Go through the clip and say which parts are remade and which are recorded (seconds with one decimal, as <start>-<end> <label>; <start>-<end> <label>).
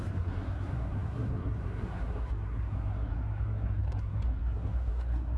0.0-5.4 remade